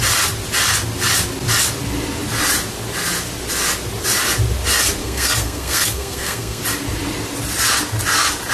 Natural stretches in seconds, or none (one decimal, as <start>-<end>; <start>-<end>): 0.0-5.0; 6.6-8.5